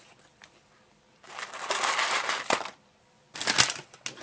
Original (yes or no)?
yes